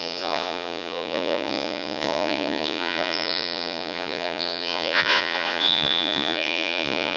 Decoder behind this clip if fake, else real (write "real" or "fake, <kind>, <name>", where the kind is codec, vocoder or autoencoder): fake, vocoder, Vocos